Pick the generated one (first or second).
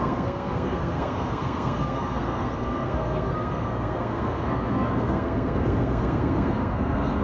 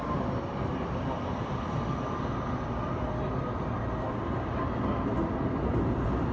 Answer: first